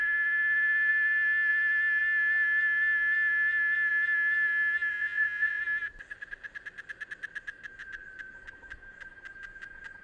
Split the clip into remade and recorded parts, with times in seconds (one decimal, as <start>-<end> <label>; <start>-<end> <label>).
0.0-4.9 recorded; 4.9-5.6 remade; 5.6-10.0 recorded